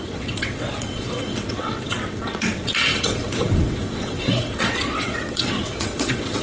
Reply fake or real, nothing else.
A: fake